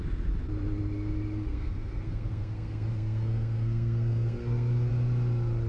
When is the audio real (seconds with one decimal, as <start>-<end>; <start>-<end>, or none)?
0.0-1.5; 4.9-5.7